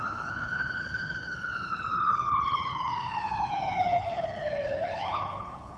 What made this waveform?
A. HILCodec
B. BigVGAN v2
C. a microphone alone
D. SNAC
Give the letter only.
A